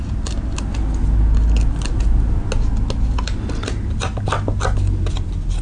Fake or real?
real